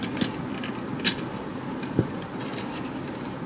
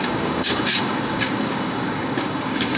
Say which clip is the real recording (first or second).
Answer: first